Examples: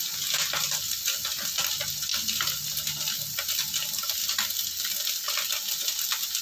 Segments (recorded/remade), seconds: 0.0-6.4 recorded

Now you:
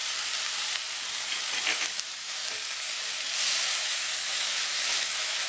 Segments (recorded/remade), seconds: 0.0-1.7 recorded; 1.7-2.4 remade; 2.4-3.8 recorded; 3.8-5.5 remade

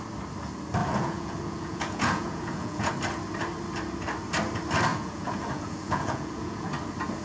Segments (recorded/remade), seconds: 0.0-0.8 recorded; 0.8-2.9 remade; 2.9-4.9 recorded; 4.9-6.7 remade; 6.7-7.2 recorded